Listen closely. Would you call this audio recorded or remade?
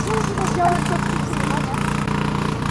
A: recorded